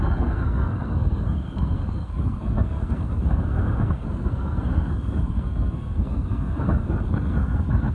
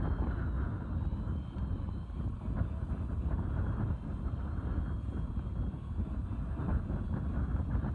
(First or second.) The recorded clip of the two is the second